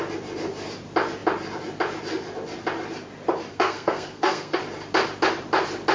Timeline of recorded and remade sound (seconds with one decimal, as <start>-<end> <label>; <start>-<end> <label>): 0.0-3.5 recorded; 3.5-4.6 remade; 4.6-5.9 recorded